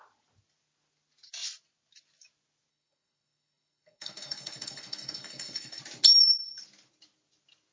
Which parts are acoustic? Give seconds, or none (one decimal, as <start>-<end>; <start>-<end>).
0.0-2.7; 5.8-7.7